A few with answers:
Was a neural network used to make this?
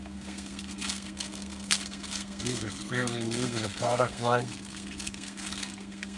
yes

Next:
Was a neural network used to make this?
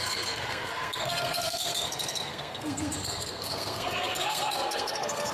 yes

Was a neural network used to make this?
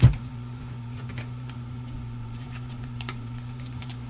yes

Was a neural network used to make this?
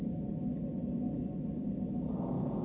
no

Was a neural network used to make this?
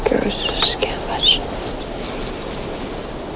no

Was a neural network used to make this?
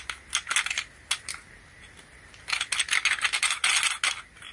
no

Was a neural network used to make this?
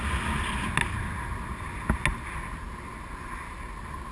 no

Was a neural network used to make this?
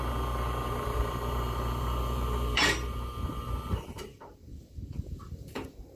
yes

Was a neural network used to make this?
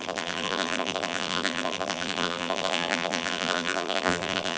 yes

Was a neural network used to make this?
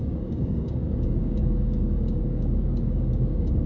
yes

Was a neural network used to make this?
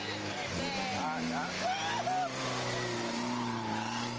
no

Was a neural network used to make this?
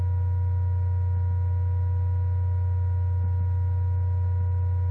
no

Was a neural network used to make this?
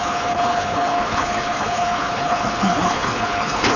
yes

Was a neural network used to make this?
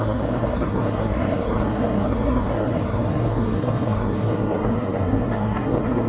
yes